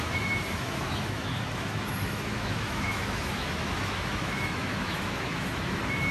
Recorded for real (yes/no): no